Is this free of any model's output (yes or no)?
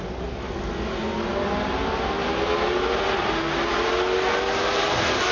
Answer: yes